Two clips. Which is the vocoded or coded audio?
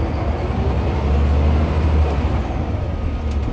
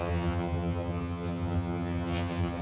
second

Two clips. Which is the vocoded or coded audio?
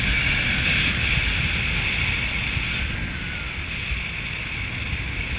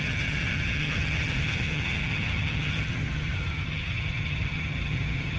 second